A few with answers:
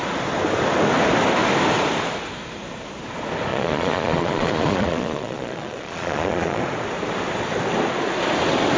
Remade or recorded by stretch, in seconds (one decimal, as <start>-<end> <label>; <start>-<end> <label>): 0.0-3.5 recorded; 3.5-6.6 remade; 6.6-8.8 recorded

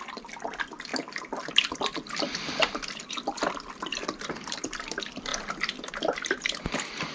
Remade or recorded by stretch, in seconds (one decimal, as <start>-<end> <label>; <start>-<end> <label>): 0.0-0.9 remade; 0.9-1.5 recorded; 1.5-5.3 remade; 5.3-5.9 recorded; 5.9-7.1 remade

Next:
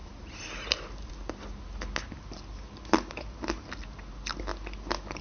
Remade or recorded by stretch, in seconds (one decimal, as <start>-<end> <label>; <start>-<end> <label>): 0.0-1.1 remade; 1.1-5.2 recorded